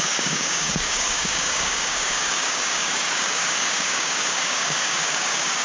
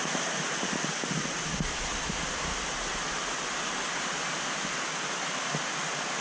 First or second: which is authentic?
second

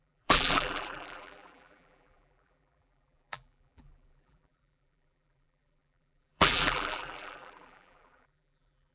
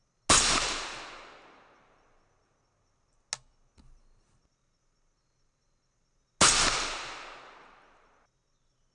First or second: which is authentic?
second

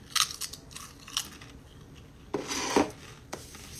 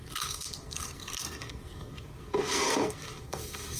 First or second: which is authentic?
first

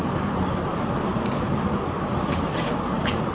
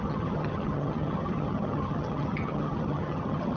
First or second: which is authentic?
first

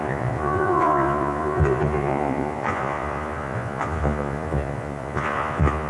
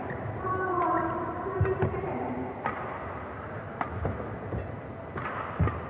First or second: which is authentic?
second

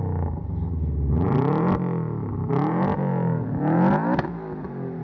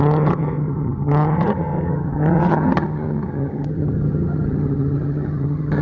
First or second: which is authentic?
first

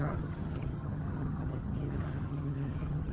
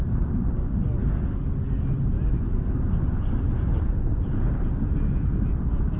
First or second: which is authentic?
second